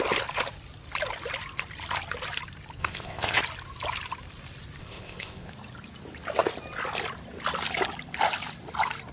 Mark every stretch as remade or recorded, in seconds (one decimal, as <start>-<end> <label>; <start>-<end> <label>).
0.0-2.8 recorded; 2.8-3.4 remade; 3.4-4.8 recorded; 4.8-5.5 remade; 5.5-9.1 recorded